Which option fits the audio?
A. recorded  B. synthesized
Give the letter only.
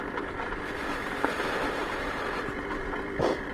B